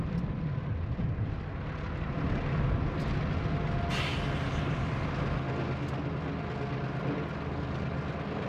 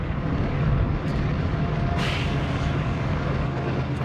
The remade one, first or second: second